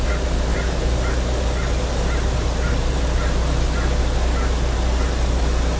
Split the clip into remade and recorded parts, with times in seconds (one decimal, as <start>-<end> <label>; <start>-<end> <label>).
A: 0.0-5.8 recorded